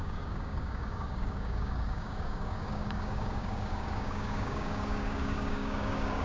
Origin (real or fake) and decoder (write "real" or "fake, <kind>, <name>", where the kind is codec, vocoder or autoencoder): fake, codec, DAC